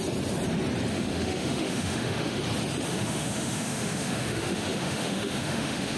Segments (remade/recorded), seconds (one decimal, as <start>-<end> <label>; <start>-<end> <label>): 0.0-0.9 recorded; 0.9-2.4 remade; 2.4-2.9 recorded; 2.9-6.0 remade